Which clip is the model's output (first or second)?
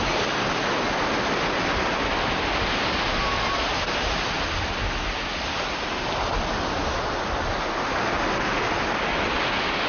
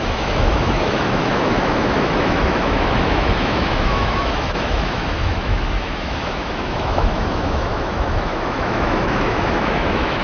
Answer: second